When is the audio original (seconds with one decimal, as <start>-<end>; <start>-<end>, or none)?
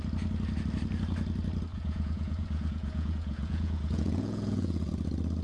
0.0-1.7; 4.9-5.4